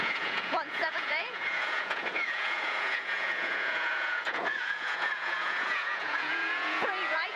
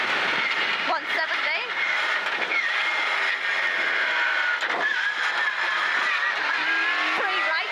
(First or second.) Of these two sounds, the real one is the second